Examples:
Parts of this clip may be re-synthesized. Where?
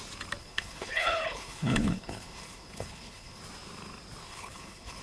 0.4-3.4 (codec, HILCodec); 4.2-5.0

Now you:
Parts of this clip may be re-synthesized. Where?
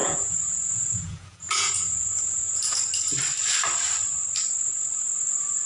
0.0-2.8 (vocoder, Vocos)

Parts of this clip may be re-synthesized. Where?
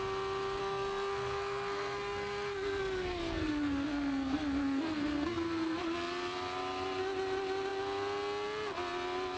0.6-5.8 (codec, SNAC)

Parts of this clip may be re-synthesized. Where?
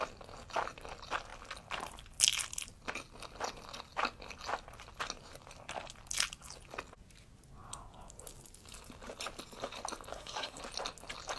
10.1-10.6 (codec, SNAC)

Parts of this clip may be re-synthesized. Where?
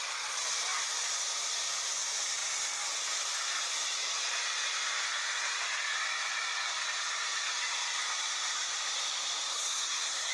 9.5-10.3 (codec, SNAC)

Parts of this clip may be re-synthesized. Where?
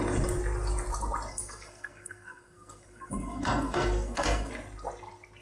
1.3-4.5 (codec, SNAC)